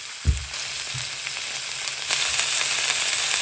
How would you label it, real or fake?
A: real